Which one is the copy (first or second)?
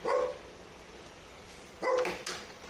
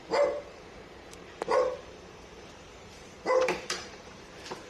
second